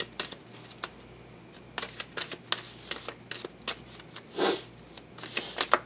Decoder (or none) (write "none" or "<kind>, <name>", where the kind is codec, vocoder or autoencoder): none